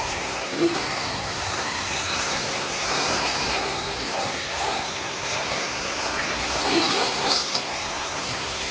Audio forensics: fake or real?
fake